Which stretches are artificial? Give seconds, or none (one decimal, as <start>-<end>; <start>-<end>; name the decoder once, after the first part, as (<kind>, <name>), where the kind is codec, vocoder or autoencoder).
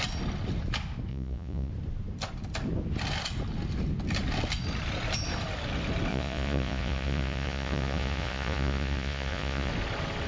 1.1-1.7 (vocoder, Vocos); 6.1-9.7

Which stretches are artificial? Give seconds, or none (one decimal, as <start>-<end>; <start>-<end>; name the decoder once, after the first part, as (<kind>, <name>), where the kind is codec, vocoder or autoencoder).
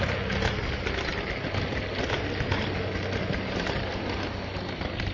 none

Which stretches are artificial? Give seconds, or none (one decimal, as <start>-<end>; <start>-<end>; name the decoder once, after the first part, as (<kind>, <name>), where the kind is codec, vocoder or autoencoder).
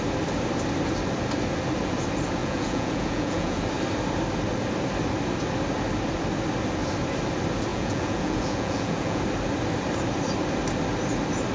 2.4-3.6 (vocoder, Vocos); 7.7-9.2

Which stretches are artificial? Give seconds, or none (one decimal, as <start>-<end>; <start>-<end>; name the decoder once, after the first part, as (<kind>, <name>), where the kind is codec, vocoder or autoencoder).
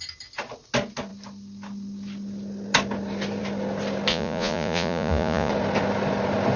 4.1-5.5 (vocoder, Vocos)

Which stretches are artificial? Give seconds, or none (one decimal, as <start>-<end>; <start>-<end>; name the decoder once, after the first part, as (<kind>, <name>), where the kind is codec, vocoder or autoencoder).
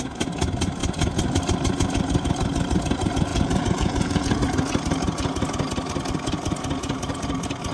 3.3-4.4 (vocoder, Vocos)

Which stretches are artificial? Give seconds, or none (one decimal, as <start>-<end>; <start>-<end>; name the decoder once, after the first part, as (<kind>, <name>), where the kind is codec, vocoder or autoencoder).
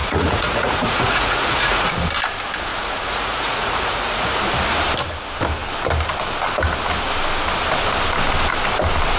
0.0-1.9 (vocoder, Vocos); 2.7-4.4